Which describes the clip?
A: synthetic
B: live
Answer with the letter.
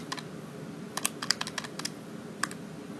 B